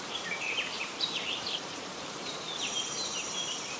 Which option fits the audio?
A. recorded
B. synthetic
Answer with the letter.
B